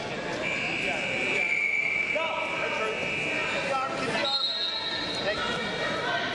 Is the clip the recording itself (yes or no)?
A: yes